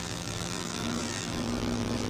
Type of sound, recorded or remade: remade